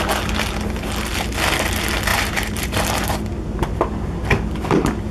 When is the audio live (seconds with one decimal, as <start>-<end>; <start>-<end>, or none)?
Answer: 0.0-2.1; 2.8-5.1